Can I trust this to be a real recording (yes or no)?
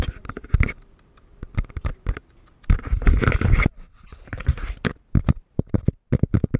yes